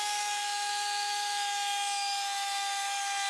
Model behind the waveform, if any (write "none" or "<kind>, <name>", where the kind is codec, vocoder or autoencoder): autoencoder, DAC-VAE